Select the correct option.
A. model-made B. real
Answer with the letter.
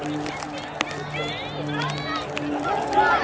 B